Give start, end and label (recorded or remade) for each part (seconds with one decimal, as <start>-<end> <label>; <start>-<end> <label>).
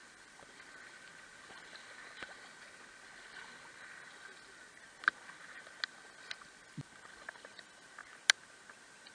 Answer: 0.0-9.1 recorded